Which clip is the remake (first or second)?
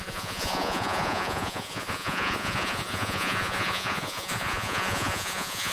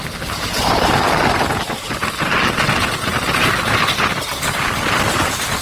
first